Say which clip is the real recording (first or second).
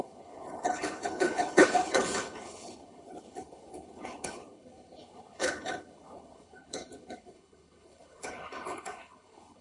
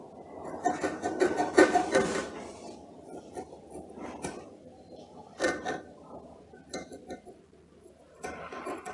second